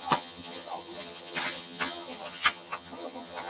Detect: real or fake fake